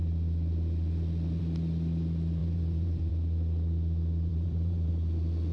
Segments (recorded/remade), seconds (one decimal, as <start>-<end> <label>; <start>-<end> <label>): 0.0-2.4 recorded; 2.4-3.1 remade; 3.1-4.3 recorded; 4.3-4.9 remade; 4.9-5.5 recorded